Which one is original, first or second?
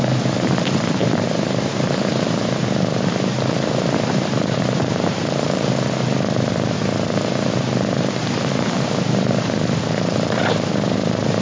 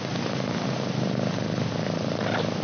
second